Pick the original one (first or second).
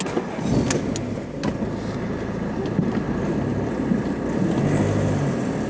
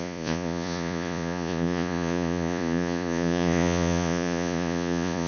first